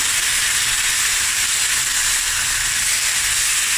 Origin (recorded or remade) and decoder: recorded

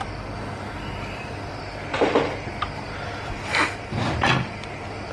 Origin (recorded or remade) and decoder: recorded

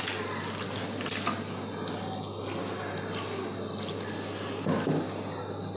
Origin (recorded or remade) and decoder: recorded